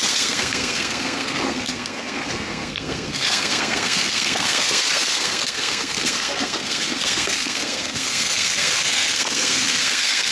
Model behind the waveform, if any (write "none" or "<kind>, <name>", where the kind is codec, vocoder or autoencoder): codec, SNAC